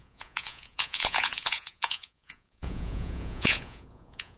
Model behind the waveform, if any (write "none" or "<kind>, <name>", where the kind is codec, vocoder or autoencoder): vocoder, Vocos